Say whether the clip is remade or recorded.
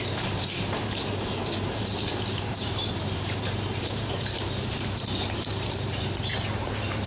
remade